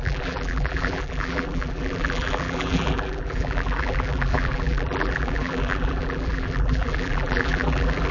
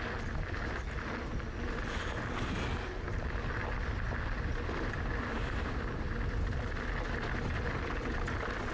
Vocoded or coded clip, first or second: first